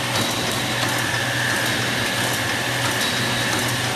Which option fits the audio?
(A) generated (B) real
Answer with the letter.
B